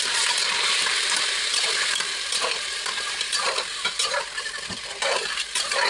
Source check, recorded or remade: remade